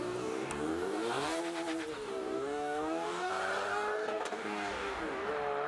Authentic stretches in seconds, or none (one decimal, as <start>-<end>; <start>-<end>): 1.4-1.9; 3.3-3.7; 5.3-5.7